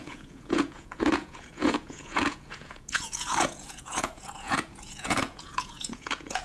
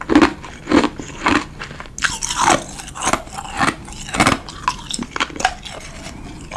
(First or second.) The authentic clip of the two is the second